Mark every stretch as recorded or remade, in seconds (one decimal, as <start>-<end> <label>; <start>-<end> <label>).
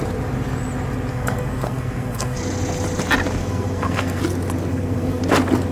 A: 0.0-1.1 recorded; 1.1-2.4 remade; 2.4-3.4 recorded; 3.4-4.2 remade; 4.2-4.7 recorded; 4.7-5.2 remade; 5.2-5.7 recorded